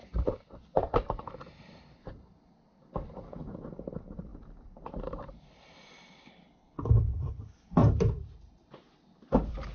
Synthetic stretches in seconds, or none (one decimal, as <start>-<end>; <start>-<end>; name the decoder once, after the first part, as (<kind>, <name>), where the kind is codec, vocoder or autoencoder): 0.0-7.8 (vocoder, BigVGAN v2); 8.6-9.7